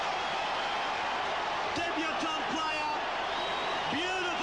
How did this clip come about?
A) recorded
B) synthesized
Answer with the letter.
A